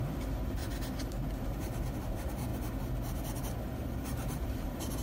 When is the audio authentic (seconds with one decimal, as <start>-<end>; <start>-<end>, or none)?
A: 0.6-1.3; 2.5-3.5